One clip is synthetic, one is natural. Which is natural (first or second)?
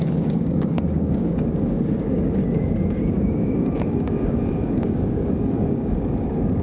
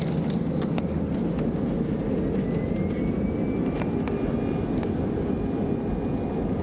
second